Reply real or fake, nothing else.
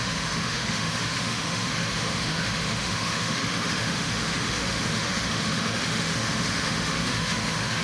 fake